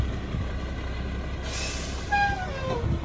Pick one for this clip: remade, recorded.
recorded